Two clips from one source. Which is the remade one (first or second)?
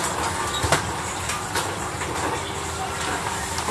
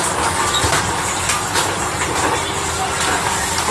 first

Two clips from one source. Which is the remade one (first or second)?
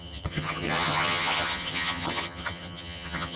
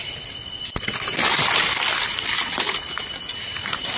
first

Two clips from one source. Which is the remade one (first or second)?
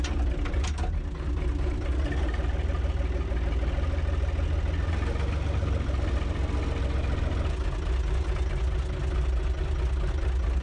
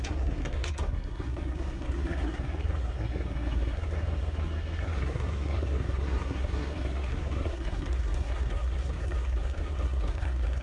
second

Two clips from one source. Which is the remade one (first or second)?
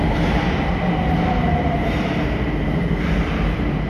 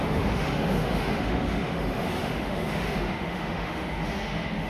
second